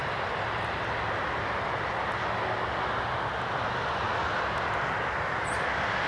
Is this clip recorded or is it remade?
recorded